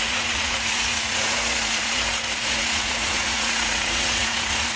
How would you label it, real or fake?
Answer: fake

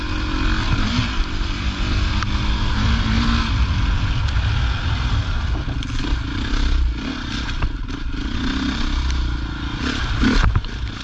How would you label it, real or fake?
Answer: real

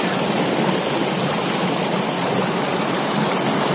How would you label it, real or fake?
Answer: real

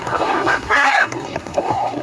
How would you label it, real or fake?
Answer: fake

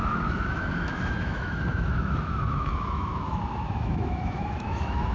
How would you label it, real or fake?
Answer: fake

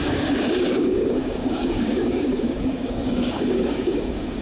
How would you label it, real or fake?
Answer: fake